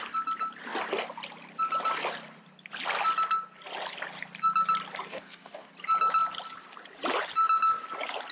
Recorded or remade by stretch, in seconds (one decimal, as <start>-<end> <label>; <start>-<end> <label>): 0.0-5.1 recorded; 5.1-5.7 remade; 5.7-8.3 recorded